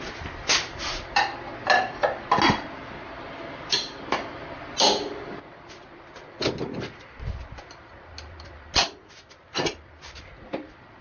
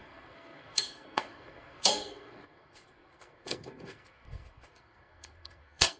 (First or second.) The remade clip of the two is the second